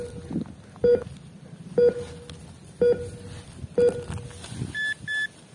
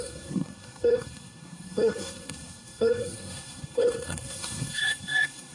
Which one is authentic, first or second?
first